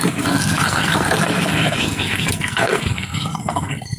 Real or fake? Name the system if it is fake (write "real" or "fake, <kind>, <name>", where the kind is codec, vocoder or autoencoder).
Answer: fake, codec, SNAC